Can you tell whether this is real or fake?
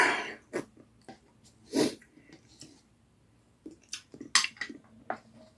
real